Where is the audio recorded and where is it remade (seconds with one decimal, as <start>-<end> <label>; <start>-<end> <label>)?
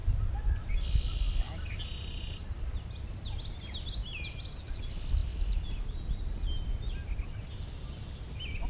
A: 0.0-8.7 recorded